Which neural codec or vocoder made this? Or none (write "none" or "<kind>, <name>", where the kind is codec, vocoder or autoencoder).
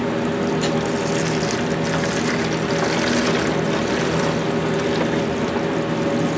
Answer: none